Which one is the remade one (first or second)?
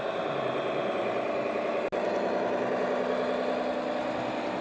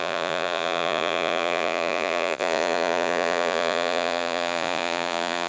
second